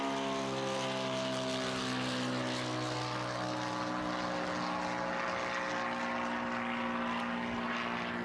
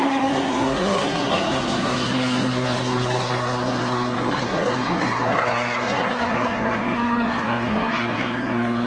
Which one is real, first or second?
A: first